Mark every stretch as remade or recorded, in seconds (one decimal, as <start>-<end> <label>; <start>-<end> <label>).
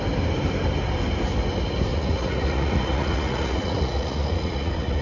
0.0-1.9 recorded; 1.9-5.0 remade